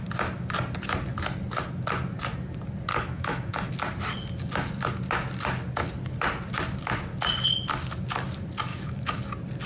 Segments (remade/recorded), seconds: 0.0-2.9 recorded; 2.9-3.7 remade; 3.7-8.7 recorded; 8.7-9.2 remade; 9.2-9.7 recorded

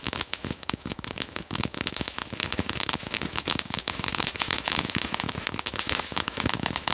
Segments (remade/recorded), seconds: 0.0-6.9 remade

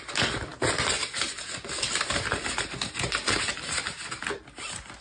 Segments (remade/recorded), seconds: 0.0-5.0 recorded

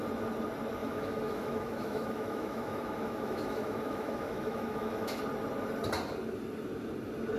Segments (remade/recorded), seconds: 0.0-0.8 recorded; 0.8-5.2 remade; 5.2-7.4 recorded

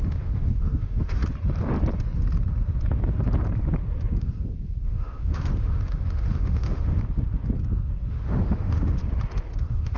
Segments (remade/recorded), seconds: 0.0-1.2 remade; 1.2-4.2 recorded; 4.2-7.0 remade; 7.0-8.1 recorded; 8.1-9.0 remade; 9.0-9.6 recorded; 9.6-10.0 remade

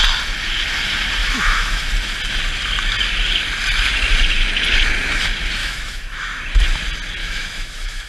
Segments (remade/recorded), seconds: 0.0-1.2 recorded; 1.2-1.9 remade; 1.9-5.6 recorded; 5.6-6.4 remade; 6.4-7.2 recorded; 7.2-8.1 remade

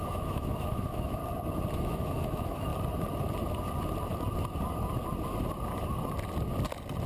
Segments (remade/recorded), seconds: 0.0-1.2 remade; 1.2-1.7 recorded; 1.7-2.7 remade; 2.7-7.1 recorded